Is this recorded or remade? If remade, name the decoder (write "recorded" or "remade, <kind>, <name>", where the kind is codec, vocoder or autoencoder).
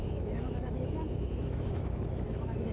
remade, autoencoder, DAC-VAE